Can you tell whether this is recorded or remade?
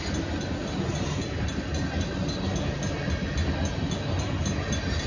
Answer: recorded